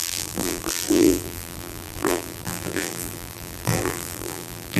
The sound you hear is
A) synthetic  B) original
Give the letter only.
A